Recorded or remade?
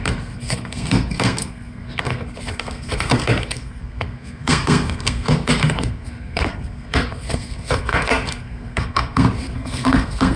remade